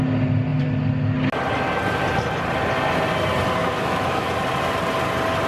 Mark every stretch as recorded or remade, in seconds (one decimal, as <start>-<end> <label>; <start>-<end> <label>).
0.0-3.6 recorded; 3.6-4.3 remade; 4.3-5.5 recorded